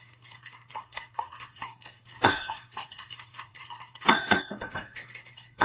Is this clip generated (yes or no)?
yes